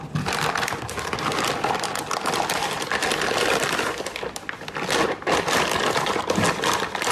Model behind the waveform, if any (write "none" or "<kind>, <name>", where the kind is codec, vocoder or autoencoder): none